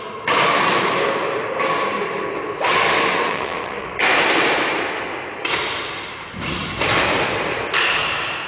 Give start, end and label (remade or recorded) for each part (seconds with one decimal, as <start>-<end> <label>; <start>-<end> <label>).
0.0-3.1 recorded; 3.1-3.9 remade; 3.9-8.5 recorded